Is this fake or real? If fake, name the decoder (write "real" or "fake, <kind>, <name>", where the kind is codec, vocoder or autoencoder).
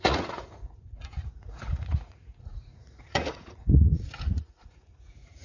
fake, vocoder, Vocos